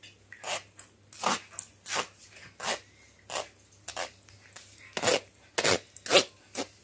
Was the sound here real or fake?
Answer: real